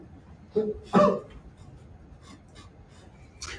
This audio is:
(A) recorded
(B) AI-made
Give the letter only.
A